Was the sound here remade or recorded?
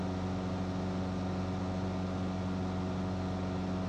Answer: recorded